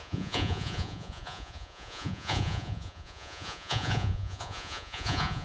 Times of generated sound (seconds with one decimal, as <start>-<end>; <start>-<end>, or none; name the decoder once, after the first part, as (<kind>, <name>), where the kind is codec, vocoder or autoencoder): 0.0-5.4 (vocoder, Vocos)